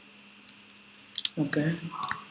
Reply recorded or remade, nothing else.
recorded